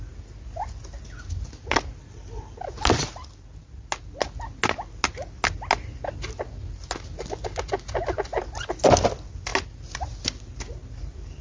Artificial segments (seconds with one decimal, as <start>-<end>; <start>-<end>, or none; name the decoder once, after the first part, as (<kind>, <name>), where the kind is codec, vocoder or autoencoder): none